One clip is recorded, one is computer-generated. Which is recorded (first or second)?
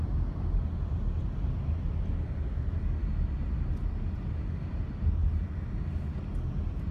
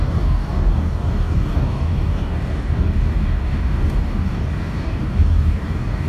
first